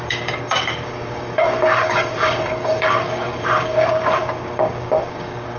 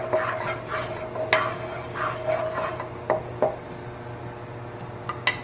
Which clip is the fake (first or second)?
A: first